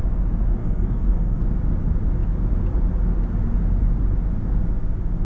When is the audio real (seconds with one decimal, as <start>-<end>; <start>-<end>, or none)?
0.0-0.6; 1.4-5.2

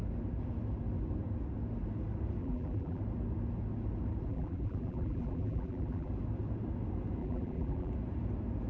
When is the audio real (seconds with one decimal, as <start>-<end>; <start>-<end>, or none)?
0.0-2.4; 3.0-4.3; 6.1-7.2; 7.9-8.7

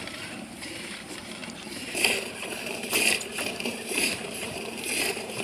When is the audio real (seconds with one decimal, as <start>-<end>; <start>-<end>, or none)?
none

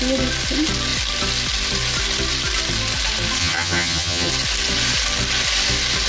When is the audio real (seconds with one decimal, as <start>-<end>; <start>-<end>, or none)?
0.0-3.4; 4.3-6.1

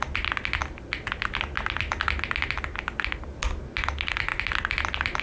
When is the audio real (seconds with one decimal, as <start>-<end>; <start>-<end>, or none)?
0.0-5.2